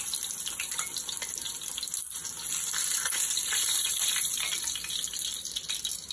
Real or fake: real